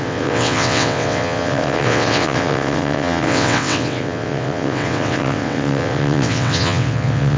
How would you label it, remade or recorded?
remade